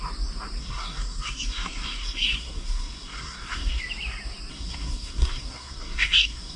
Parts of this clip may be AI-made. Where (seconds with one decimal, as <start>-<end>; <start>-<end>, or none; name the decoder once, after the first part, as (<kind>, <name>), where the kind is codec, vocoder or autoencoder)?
0.6-3.8 (codec, SNAC); 4.5-6.6